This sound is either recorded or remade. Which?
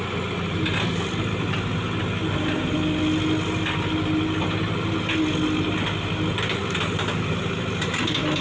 recorded